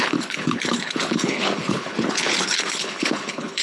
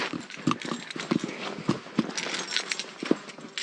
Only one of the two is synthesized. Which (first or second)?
first